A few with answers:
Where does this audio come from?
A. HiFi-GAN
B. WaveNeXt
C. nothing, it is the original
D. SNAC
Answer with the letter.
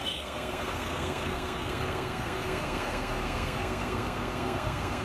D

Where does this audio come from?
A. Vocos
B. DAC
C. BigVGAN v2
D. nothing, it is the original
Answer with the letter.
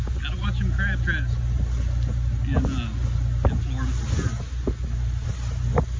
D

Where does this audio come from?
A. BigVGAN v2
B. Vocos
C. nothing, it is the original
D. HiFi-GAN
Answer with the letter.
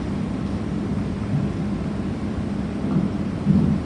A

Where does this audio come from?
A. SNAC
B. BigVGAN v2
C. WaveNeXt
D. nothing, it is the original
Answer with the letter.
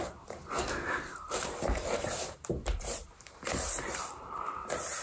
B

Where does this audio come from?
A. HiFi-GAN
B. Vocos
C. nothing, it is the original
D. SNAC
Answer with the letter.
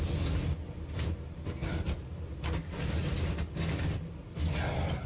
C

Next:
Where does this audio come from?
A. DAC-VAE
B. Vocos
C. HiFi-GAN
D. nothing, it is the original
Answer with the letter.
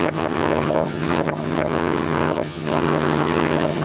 C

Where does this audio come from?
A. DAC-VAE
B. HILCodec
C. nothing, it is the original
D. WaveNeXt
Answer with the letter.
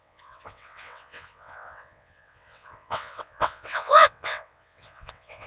D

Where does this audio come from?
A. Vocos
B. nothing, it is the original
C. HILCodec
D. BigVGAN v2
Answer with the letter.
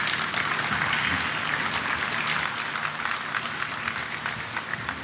B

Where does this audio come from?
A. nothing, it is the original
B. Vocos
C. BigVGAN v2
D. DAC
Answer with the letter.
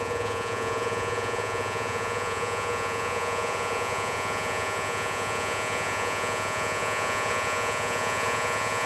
B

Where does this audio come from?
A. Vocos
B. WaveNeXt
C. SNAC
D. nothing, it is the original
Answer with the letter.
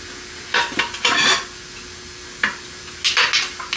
D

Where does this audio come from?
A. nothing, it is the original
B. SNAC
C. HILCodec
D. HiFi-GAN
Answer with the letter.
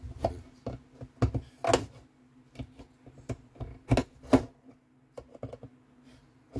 A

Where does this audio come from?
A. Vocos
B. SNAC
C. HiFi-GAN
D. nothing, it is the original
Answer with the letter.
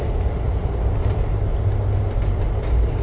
D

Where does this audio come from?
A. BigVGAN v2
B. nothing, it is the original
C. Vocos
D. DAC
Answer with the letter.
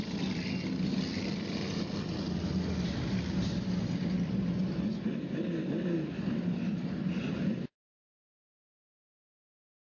B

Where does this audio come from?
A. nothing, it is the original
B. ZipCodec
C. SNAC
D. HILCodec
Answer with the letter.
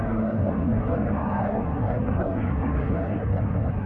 C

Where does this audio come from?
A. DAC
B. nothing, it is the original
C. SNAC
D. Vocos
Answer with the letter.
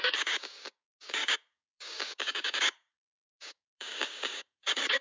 A